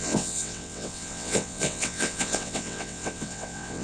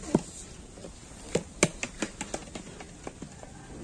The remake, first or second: first